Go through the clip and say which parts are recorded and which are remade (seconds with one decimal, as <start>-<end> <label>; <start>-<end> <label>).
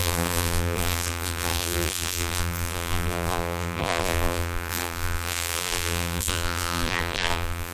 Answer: 0.0-7.7 remade